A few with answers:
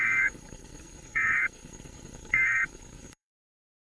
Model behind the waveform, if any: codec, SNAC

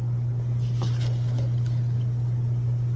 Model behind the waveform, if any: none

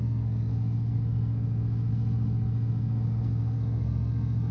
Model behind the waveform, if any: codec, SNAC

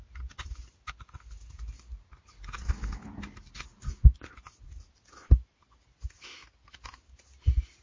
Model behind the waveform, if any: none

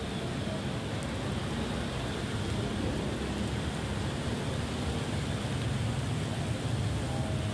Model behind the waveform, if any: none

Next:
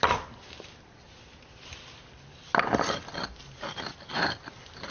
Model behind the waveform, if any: none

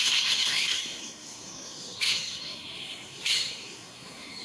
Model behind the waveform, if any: codec, SNAC